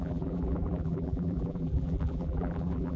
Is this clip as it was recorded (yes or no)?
no